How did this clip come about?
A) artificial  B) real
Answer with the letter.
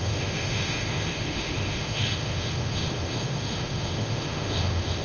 A